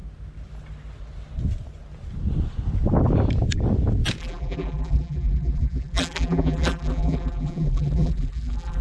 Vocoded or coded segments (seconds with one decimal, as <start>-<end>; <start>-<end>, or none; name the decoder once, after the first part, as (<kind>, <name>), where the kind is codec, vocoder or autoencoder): 4.2-8.8 (vocoder, BigVGAN v2)